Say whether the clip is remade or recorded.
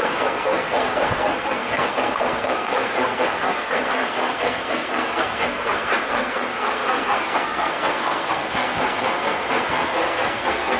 remade